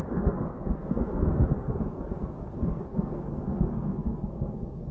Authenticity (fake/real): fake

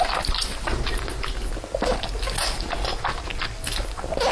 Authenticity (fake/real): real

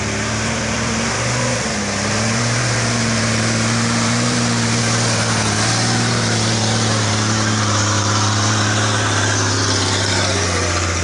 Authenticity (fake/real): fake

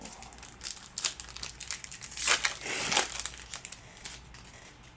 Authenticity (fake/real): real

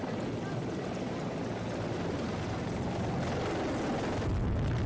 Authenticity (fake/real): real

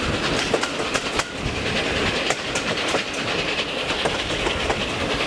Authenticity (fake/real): real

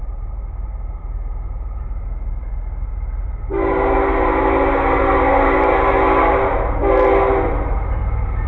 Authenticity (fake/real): fake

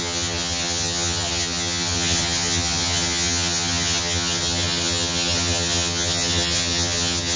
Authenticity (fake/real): fake